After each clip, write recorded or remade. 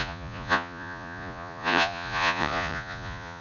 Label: remade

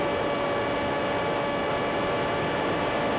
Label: recorded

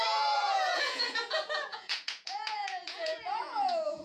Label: remade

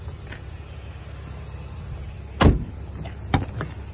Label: recorded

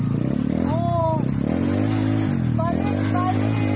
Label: recorded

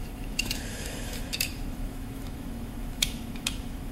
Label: remade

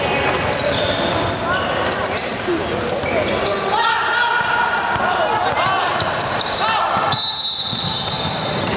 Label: recorded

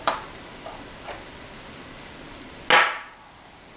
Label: recorded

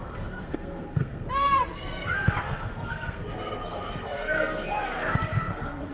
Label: remade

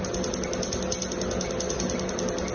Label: recorded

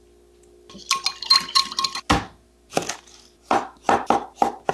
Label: recorded